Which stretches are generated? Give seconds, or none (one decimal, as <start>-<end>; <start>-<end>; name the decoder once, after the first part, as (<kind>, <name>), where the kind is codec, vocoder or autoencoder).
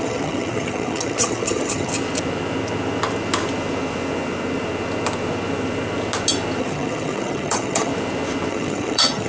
0.0-1.9 (vocoder, HiFi-GAN); 6.6-7.9; 8.5-9.3